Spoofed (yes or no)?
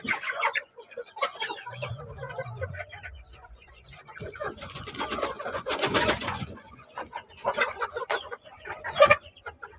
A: yes